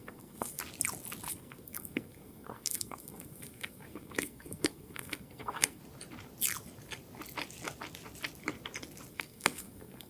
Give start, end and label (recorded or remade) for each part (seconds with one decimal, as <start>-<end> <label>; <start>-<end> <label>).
0.0-0.6 remade; 0.6-1.3 recorded; 1.3-5.8 remade; 5.8-9.1 recorded; 9.1-10.1 remade